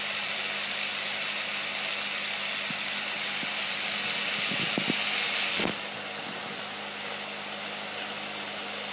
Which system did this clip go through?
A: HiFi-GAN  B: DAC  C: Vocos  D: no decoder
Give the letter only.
D